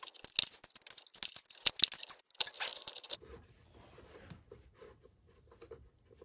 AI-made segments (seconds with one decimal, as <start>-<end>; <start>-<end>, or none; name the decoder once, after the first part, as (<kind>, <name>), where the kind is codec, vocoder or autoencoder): 2.7-3.5 (vocoder, BigVGAN v2)